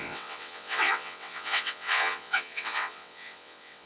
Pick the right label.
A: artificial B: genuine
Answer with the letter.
A